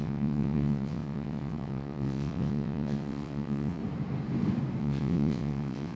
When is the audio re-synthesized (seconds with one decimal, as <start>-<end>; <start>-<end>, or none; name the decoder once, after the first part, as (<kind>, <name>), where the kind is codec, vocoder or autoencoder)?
0.0-3.8 (vocoder, WaveNeXt); 4.8-6.0